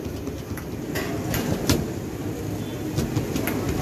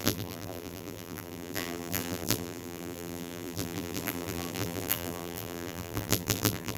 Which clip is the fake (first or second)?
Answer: second